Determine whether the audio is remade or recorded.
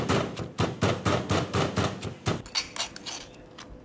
recorded